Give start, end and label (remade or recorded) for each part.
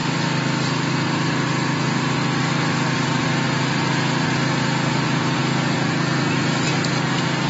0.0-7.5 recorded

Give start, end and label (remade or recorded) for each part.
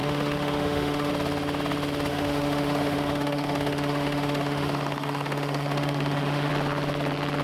0.0-1.1 remade; 1.1-2.1 recorded; 2.1-6.5 remade; 6.5-7.4 recorded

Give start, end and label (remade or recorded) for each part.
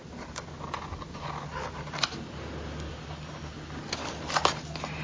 0.0-5.0 recorded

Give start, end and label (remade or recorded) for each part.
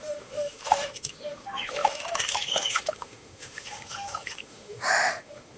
0.0-5.6 remade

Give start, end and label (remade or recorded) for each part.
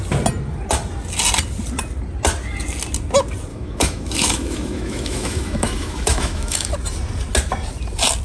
0.0-3.5 recorded; 3.5-6.7 remade; 6.7-8.2 recorded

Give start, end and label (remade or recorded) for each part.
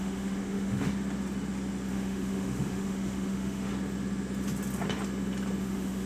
0.0-0.9 remade; 0.9-1.9 recorded; 1.9-3.7 remade; 3.7-5.6 recorded; 5.6-6.1 remade